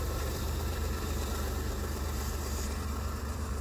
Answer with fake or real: fake